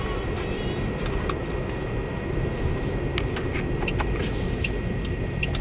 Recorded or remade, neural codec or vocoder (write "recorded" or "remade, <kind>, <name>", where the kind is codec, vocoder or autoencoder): recorded